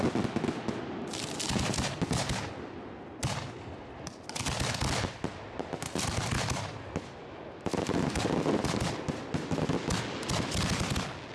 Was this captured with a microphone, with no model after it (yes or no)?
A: yes